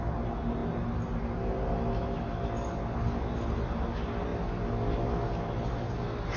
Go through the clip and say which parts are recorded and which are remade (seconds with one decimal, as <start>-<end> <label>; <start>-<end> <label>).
0.0-6.4 recorded